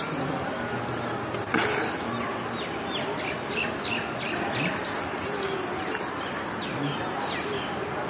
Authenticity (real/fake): real